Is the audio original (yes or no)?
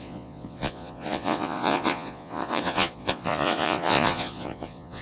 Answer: no